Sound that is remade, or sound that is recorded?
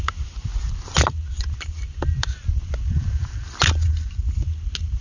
recorded